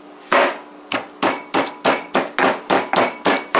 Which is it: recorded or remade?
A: recorded